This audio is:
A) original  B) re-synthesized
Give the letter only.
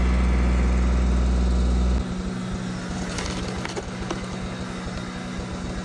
A